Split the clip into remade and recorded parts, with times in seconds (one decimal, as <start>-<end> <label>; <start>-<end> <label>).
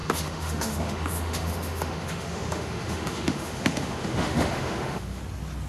0.0-5.2 remade; 5.2-5.7 recorded